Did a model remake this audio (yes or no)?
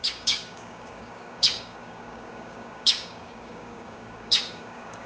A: yes